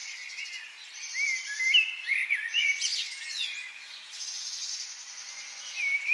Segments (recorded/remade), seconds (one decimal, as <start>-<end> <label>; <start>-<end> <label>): 0.0-0.7 remade; 0.7-2.1 recorded; 2.1-5.6 remade; 5.6-6.1 recorded